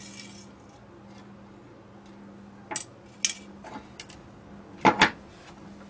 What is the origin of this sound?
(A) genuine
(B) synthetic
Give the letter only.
A